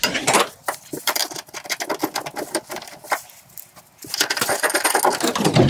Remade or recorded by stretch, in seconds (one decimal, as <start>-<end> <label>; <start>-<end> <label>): 0.0-5.7 recorded

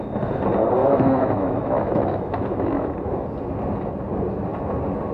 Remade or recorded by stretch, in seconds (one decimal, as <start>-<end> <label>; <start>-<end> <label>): 0.0-0.8 recorded; 0.8-2.9 remade; 2.9-5.1 recorded

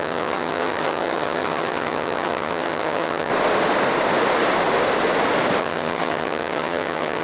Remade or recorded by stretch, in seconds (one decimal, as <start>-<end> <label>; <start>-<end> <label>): 0.0-3.3 remade; 3.3-5.6 recorded; 5.6-7.2 remade

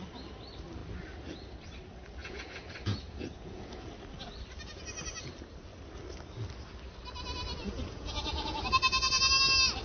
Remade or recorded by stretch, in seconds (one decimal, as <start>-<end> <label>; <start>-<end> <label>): 0.0-2.2 recorded; 2.2-3.9 remade; 3.9-7.6 recorded; 7.6-8.5 remade; 8.5-9.8 recorded

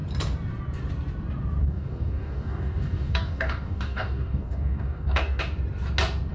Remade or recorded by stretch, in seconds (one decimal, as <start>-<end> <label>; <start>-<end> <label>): 0.0-1.6 recorded; 1.6-5.4 remade; 5.4-6.3 recorded